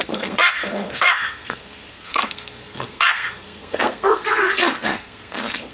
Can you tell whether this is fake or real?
fake